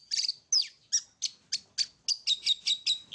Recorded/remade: recorded